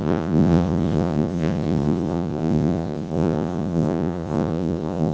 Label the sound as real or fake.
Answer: fake